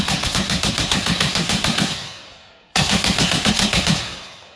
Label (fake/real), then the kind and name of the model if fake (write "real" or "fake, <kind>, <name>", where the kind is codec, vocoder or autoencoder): fake, codec, SNAC